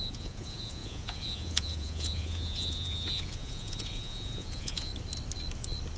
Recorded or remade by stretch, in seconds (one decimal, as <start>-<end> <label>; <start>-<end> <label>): 0.0-4.9 remade; 4.9-6.0 recorded